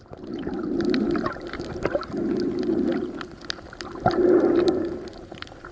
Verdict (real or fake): real